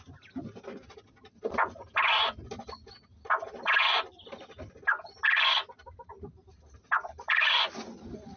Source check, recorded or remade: recorded